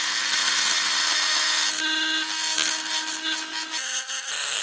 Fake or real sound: real